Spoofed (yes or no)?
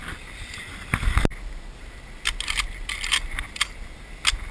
no